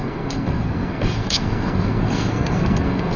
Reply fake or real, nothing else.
fake